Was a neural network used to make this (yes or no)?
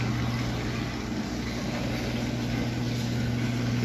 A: no